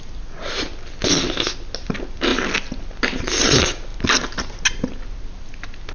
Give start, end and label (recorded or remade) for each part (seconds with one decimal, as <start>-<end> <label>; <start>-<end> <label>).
0.0-5.9 recorded